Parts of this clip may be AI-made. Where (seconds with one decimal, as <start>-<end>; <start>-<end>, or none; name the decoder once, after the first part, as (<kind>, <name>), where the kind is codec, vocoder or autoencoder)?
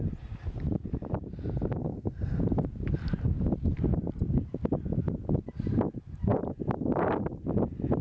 1.8-2.4 (codec, SNAC)